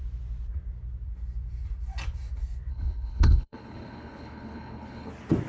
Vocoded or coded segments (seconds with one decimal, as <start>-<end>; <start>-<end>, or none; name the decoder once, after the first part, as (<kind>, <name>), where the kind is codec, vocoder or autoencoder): 2.7-5.1 (codec, HILCodec)